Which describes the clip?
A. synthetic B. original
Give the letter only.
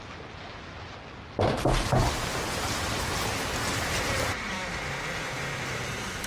A